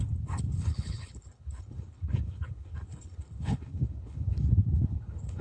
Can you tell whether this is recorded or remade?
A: remade